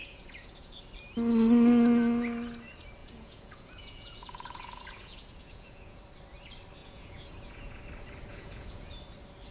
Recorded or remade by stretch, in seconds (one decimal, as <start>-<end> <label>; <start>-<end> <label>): 0.0-0.8 remade; 0.8-3.0 recorded; 3.0-6.0 remade; 6.0-6.8 recorded; 6.8-7.8 remade; 7.8-8.3 recorded; 8.3-8.9 remade; 8.9-9.5 recorded